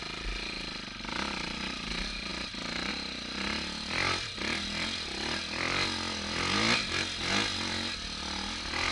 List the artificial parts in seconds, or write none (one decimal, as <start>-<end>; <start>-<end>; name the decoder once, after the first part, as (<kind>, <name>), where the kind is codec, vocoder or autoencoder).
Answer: none